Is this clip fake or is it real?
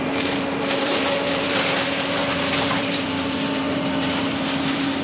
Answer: fake